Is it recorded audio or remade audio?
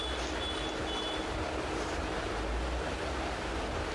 recorded